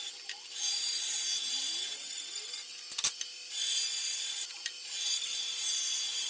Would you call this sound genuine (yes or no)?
yes